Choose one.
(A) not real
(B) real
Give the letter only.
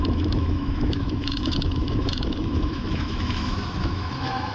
A